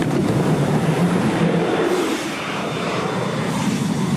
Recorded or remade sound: remade